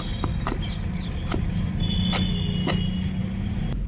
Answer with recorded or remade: recorded